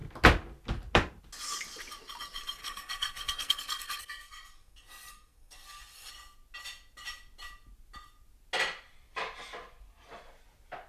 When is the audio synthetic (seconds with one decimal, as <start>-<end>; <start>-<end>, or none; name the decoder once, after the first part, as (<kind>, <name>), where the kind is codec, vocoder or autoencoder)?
2.6-6.1 (codec, SNAC)